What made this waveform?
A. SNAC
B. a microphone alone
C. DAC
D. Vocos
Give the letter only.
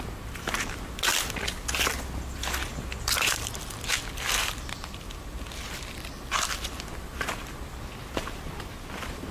B